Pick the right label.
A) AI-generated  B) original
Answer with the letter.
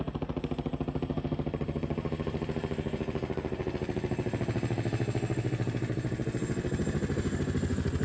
B